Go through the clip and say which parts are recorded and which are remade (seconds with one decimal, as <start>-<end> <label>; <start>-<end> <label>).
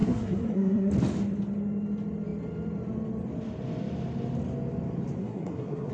0.0-0.9 remade; 0.9-5.2 recorded; 5.2-5.9 remade